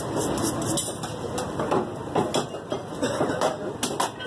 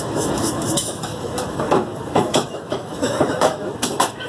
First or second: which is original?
first